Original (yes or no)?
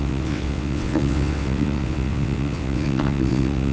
no